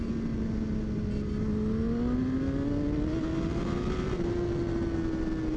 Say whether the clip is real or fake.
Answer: real